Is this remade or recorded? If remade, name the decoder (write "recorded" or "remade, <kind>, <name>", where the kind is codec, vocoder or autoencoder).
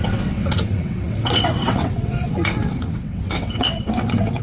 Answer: remade, vocoder, WaveNeXt